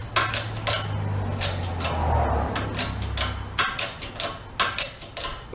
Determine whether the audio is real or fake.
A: real